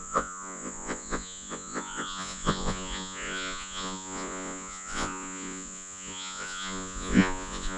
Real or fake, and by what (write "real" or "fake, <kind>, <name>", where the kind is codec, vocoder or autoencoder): fake, vocoder, Vocos